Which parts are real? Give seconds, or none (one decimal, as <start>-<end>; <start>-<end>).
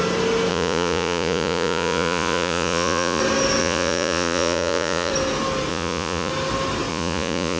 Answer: 0.0-0.5; 3.2-3.6; 5.1-5.7; 6.3-6.9